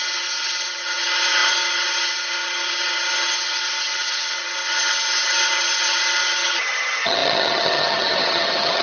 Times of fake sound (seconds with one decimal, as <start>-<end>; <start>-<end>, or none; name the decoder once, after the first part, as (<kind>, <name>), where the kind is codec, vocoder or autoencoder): 0.0-8.8 (vocoder, HiFi-GAN)